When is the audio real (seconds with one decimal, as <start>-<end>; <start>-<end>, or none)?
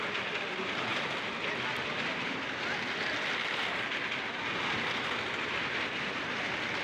0.0-6.8